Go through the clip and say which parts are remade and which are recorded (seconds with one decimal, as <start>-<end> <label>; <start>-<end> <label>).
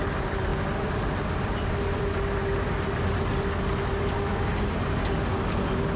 0.0-6.0 recorded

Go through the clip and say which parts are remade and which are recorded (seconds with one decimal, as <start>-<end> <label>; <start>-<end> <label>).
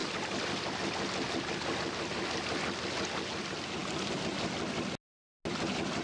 0.0-6.0 recorded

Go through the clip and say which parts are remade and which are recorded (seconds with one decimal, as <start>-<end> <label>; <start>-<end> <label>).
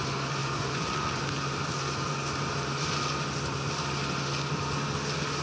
0.0-0.4 recorded; 0.4-1.2 remade; 1.2-5.4 recorded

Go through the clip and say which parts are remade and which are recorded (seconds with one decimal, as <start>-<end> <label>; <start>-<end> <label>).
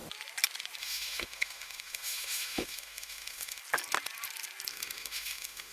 0.0-0.8 recorded; 0.8-3.6 remade; 3.6-4.7 recorded; 4.7-5.7 remade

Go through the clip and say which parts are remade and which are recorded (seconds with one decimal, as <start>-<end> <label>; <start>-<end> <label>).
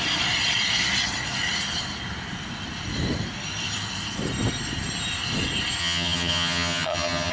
0.0-5.8 recorded; 5.8-7.3 remade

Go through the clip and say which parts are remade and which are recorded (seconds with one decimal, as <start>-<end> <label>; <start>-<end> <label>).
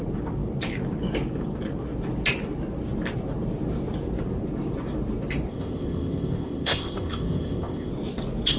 0.0-5.5 recorded; 5.5-7.9 remade; 7.9-8.6 recorded